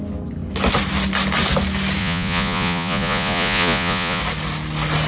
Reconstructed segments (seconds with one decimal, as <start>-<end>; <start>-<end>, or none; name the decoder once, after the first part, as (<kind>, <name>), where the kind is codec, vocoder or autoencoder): 2.0-4.2 (vocoder, Vocos)